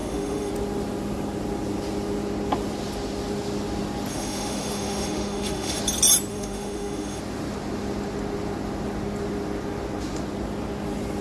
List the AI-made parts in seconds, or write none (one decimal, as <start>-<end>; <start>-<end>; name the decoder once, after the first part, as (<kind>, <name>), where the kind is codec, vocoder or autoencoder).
0.0-0.5 (autoencoder, DAC-VAE); 4.1-5.8; 6.3-7.2